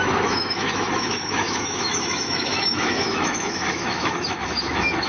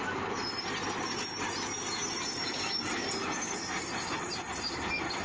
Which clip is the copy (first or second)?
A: first